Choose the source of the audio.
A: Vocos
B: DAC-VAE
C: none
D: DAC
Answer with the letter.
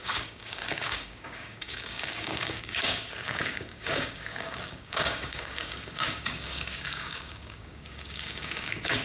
D